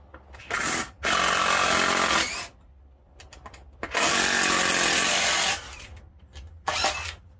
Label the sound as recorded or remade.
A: recorded